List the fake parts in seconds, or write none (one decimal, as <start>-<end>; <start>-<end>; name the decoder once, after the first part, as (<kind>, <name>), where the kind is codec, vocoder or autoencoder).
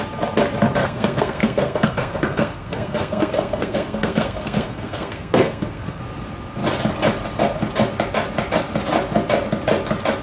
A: 0.8-6.0 (codec, SNAC)